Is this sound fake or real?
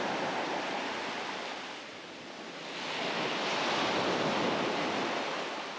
real